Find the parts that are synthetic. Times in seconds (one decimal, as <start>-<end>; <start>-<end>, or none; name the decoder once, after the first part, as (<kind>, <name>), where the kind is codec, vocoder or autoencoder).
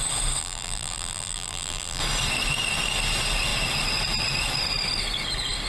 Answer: 0.4-2.0 (vocoder, BigVGAN v2)